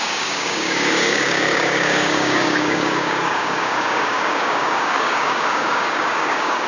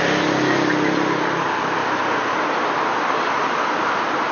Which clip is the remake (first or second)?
first